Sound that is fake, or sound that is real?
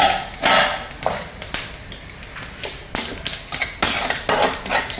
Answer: real